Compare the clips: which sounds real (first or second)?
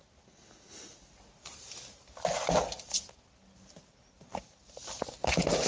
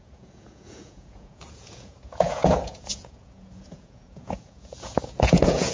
first